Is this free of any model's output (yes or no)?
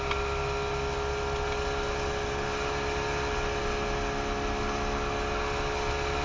yes